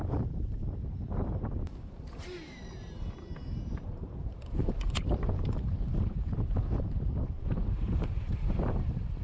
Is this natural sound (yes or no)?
no